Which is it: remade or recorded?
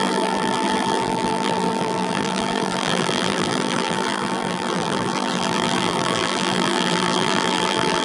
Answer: remade